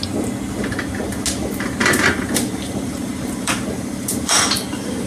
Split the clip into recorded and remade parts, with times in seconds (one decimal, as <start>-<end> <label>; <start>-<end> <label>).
0.0-1.8 recorded; 1.8-5.1 remade